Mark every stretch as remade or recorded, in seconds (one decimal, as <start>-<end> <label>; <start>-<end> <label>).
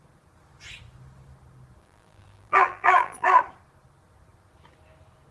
0.0-1.8 recorded; 1.8-3.4 remade; 3.4-5.3 recorded